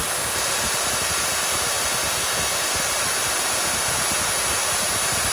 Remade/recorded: recorded